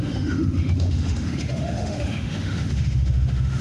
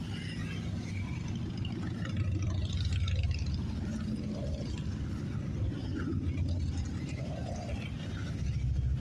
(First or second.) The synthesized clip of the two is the first